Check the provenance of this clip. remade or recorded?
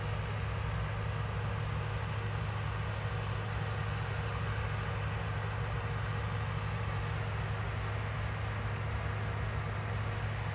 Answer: recorded